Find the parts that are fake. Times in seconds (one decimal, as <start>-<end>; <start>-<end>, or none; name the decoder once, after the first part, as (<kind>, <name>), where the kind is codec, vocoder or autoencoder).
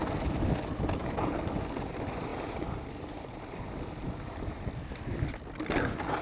none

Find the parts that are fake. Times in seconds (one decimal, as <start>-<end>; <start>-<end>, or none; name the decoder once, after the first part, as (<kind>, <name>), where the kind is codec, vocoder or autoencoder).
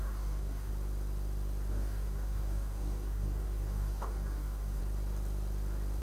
0.0-0.7 (codec, DAC); 1.7-4.8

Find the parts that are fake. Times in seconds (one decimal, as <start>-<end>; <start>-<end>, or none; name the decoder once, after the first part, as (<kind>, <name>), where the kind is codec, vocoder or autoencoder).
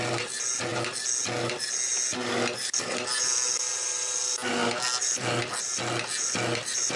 none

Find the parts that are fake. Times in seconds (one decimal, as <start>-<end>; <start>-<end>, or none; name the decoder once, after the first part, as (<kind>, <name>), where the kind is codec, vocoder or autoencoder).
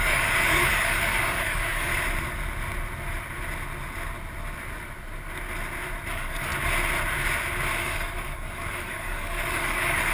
0.0-1.9 (codec, DAC); 6.1-6.5; 7.8-10.1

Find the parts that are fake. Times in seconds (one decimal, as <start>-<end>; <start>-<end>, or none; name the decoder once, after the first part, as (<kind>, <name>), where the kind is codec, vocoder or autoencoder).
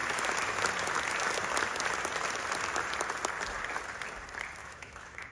4.6-5.3 (autoencoder, DAC-VAE)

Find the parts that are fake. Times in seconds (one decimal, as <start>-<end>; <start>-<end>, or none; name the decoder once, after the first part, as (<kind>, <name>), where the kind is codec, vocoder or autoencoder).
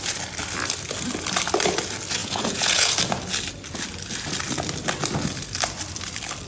2.2-3.0 (vocoder, Vocos)